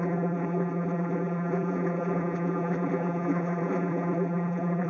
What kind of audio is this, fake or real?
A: fake